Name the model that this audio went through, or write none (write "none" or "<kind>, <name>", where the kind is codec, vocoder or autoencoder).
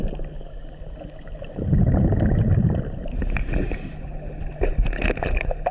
none